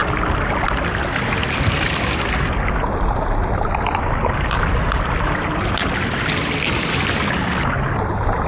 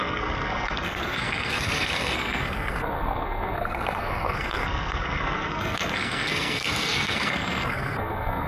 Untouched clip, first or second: first